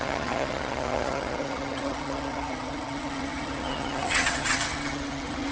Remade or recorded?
remade